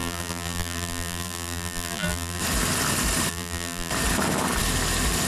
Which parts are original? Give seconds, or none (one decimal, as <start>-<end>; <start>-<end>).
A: 2.4-3.3; 3.9-5.3